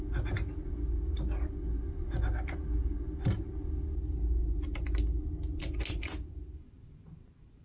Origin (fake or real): real